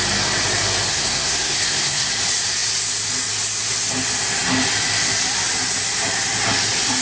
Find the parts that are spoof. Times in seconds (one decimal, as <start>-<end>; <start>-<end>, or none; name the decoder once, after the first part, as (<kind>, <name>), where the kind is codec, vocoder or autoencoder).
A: 0.9-2.1 (codec, SNAC)